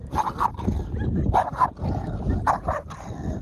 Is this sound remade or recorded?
recorded